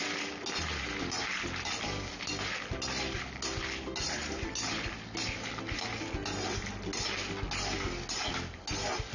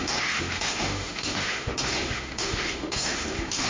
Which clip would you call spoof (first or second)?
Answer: second